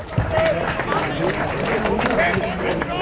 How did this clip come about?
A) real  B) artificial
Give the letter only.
A